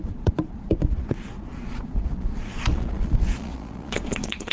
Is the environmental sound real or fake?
fake